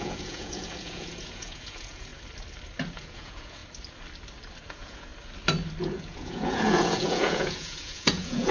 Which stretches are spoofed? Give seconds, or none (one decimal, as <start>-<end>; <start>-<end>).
0.0-2.1; 2.9-3.6; 4.6-5.1; 5.8-8.5